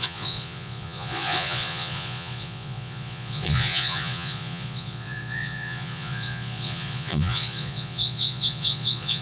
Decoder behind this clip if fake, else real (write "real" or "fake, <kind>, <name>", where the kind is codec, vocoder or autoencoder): fake, vocoder, Vocos